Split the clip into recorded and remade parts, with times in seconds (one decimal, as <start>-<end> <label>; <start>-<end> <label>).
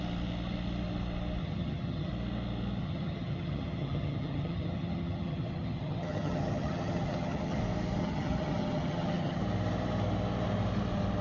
0.0-1.4 recorded; 1.4-2.1 remade; 2.1-2.8 recorded; 2.8-7.6 remade; 7.6-8.0 recorded; 8.0-9.4 remade; 9.4-11.2 recorded